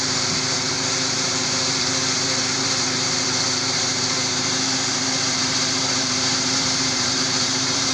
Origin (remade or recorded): remade